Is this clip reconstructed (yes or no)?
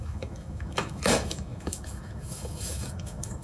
yes